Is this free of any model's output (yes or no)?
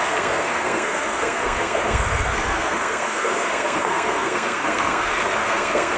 no